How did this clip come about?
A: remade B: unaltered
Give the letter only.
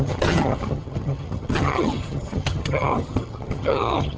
A